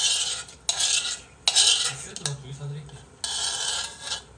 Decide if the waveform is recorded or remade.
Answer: recorded